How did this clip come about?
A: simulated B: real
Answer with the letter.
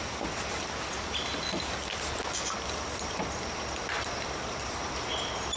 B